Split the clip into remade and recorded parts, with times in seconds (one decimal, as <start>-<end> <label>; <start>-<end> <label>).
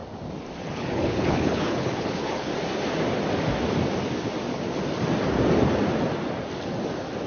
0.0-0.7 recorded; 0.7-2.5 remade; 2.5-7.3 recorded